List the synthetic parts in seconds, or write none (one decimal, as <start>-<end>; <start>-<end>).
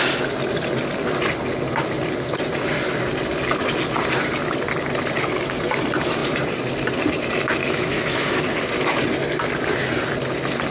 7.6-8.4